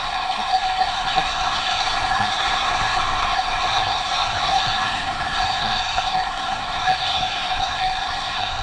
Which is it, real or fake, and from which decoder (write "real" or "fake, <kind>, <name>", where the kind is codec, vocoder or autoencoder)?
fake, codec, SNAC